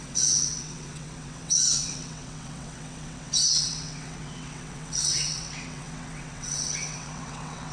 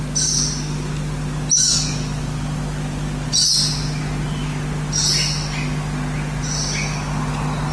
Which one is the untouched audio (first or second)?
second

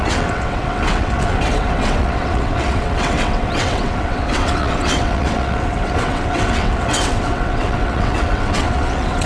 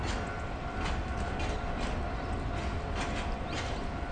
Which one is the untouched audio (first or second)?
second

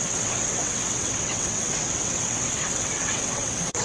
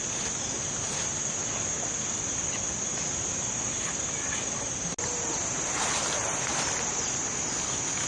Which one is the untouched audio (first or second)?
second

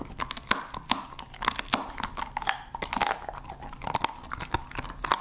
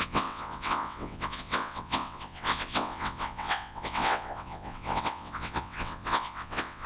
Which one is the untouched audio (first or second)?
first